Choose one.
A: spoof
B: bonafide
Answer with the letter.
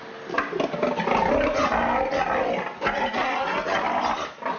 B